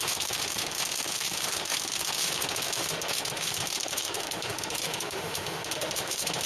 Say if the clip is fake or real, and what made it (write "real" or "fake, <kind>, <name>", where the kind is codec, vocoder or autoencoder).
fake, autoencoder, DAC-VAE